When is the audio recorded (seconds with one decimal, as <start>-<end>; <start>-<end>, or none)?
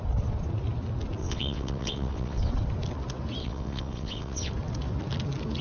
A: 0.0-1.2; 2.5-3.4; 4.5-5.6